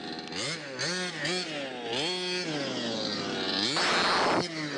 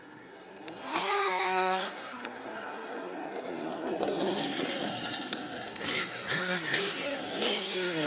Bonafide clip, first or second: first